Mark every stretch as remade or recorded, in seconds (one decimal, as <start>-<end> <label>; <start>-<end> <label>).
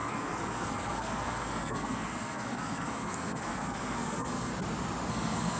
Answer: 0.0-4.5 remade; 4.5-5.1 recorded; 5.1-5.6 remade